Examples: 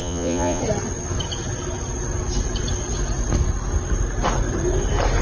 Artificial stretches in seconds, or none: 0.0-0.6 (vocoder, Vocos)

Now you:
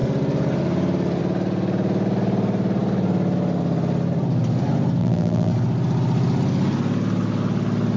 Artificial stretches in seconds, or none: 5.0-5.5 (vocoder, BigVGAN v2)

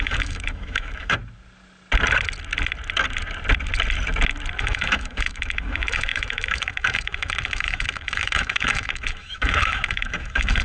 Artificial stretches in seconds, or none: 0.0-1.2 (autoencoder, DAC-VAE); 4.6-10.6

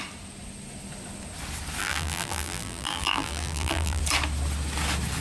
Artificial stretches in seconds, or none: 1.8-4.0 (vocoder, BigVGAN v2)

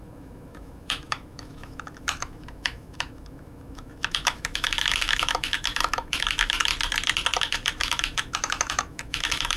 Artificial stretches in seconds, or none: 0.0-6.7 (autoencoder, DAC-VAE); 7.4-9.6

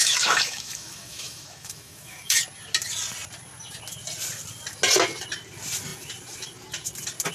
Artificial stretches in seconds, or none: 0.0-2.4 (autoencoder, DAC-VAE)

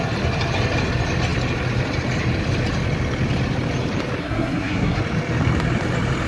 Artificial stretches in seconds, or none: 4.2-5.0 (codec, SNAC)

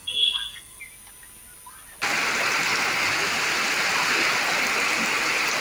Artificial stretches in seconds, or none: 0.0-0.8 (codec, SNAC)